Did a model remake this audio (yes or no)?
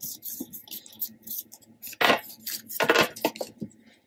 no